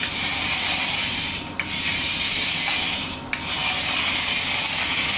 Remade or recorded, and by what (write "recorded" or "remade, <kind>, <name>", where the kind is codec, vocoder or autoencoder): recorded